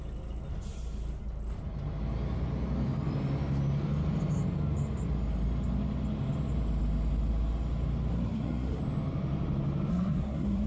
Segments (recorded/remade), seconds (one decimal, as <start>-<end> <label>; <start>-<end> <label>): 0.0-8.1 recorded; 8.1-8.8 remade; 8.8-9.9 recorded; 9.9-10.7 remade